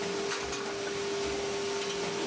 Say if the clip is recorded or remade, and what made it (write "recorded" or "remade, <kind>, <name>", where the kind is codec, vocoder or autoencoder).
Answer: recorded